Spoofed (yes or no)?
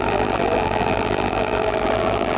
yes